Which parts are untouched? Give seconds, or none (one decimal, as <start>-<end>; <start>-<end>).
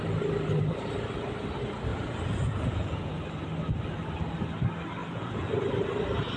0.0-1.9; 3.1-5.0; 5.5-6.4